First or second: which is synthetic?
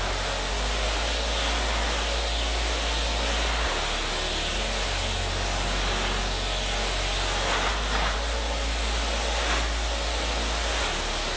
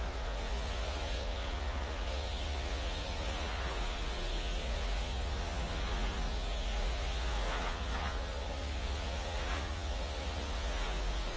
second